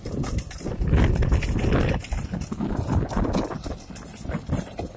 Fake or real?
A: real